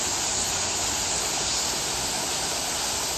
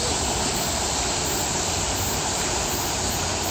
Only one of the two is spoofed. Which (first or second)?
second